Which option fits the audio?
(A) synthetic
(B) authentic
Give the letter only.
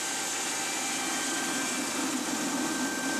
B